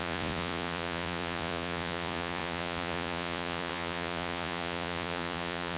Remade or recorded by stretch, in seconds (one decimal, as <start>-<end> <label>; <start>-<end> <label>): 0.0-5.8 remade